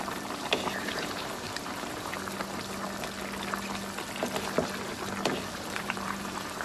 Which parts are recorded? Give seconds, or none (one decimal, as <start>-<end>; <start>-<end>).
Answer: 2.1-5.5